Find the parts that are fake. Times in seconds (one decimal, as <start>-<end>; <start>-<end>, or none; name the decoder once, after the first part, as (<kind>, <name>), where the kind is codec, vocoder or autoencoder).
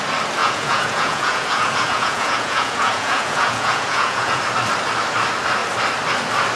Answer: 0.4-4.4 (vocoder, Vocos)